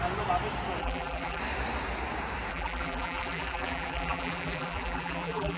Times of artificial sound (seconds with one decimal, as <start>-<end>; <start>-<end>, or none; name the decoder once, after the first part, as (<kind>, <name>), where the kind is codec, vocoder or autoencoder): 0.8-1.4 (vocoder, BigVGAN v2); 2.5-5.6

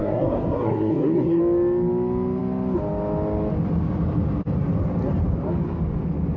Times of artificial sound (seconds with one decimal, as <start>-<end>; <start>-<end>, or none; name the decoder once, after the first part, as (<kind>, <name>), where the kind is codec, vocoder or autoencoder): 0.0-1.4 (codec, SNAC)

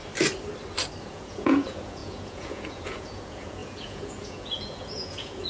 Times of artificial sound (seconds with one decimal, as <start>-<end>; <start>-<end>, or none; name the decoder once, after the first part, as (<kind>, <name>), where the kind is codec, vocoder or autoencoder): 1.0-5.5 (vocoder, Vocos)

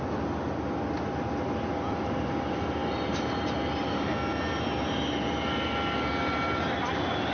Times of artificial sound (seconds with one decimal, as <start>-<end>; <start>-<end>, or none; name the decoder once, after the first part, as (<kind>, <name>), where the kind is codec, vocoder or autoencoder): none

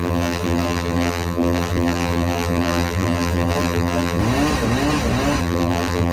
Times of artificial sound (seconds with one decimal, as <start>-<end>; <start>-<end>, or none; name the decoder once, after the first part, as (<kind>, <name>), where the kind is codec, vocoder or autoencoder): 0.0-4.2 (vocoder, BigVGAN v2); 5.4-6.1

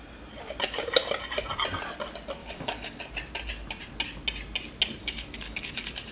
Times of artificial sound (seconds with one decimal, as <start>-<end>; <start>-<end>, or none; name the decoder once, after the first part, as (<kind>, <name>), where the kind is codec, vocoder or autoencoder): 2.4-3.0 (codec, DAC); 5.0-6.1

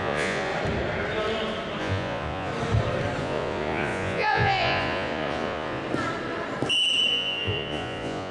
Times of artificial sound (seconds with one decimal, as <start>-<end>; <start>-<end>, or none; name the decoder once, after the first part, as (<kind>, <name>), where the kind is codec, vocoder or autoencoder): 0.0-0.5 (vocoder, Vocos); 1.8-2.5; 3.2-5.8; 7.1-8.3

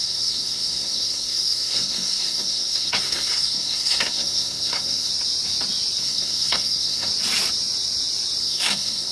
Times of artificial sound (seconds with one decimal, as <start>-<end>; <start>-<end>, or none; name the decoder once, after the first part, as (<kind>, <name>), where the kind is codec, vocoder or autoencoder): 0.0-5.1 (codec, SNAC); 6.0-7.1; 8.4-9.1